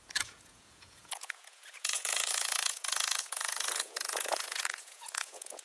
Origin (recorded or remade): remade